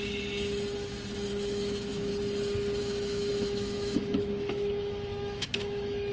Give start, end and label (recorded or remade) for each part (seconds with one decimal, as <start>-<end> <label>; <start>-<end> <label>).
0.0-1.3 recorded; 1.3-2.1 remade; 2.1-2.8 recorded; 2.8-6.1 remade